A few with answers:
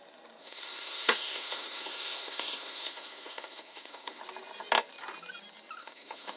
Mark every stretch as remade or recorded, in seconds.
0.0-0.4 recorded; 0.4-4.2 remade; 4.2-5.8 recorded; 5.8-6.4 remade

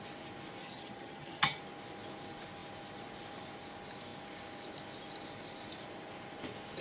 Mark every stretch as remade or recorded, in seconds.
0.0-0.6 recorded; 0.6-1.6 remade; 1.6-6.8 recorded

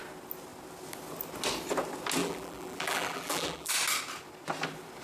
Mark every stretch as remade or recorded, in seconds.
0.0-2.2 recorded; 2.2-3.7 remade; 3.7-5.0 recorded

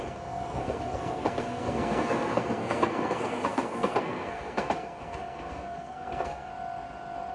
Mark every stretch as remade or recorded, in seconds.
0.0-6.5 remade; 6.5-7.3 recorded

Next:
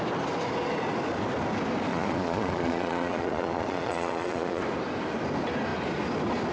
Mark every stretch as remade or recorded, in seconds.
0.0-1.9 recorded; 1.9-4.6 remade; 4.6-6.5 recorded

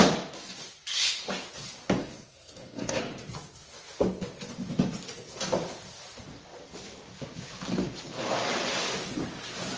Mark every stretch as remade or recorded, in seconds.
0.0-2.0 recorded; 2.0-3.0 remade; 3.0-9.8 recorded

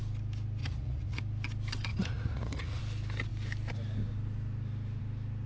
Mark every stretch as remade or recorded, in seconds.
0.0-0.6 recorded; 0.6-1.2 remade; 1.2-1.9 recorded; 1.9-2.8 remade; 2.8-5.5 recorded